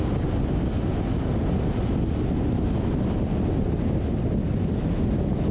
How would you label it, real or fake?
real